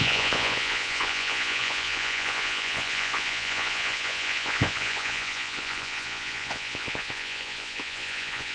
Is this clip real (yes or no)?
no